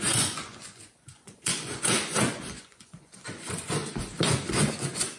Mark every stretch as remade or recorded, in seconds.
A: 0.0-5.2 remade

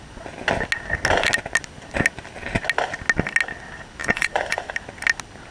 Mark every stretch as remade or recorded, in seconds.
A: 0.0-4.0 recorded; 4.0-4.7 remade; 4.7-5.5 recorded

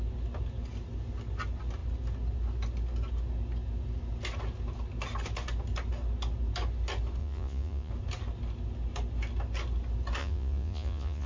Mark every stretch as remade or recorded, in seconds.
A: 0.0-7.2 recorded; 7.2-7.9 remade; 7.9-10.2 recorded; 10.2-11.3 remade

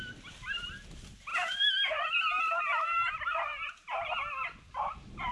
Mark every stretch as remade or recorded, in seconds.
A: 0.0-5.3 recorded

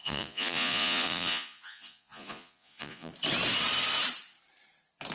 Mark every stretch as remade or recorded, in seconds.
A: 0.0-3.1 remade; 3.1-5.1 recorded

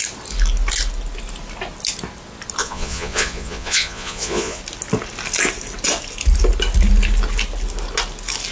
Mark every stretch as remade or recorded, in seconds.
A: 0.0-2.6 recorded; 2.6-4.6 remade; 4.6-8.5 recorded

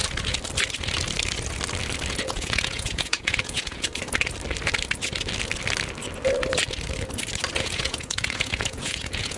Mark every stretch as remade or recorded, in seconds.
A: 0.0-2.1 recorded; 2.1-3.9 remade; 3.9-7.6 recorded; 7.6-9.4 remade